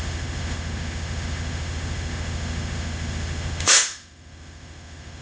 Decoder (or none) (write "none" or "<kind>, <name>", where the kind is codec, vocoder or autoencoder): autoencoder, DAC-VAE